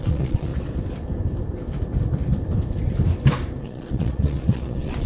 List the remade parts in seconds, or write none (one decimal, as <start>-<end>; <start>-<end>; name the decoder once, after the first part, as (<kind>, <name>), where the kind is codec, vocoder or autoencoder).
0.0-0.5 (vocoder, Vocos); 3.6-5.1